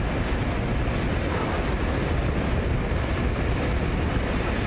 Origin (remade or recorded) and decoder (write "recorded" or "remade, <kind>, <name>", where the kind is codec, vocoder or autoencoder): recorded